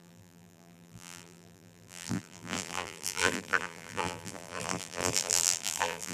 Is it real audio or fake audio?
fake